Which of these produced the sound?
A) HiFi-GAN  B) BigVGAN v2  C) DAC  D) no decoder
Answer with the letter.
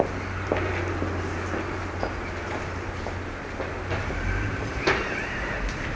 D